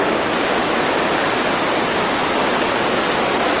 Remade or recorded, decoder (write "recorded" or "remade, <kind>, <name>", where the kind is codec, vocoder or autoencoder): recorded